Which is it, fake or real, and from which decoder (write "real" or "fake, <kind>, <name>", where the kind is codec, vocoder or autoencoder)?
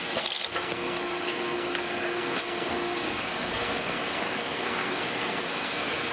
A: fake, codec, SNAC